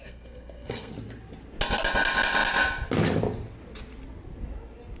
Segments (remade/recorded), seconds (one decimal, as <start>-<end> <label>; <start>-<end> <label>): 0.0-0.9 remade; 0.9-5.0 recorded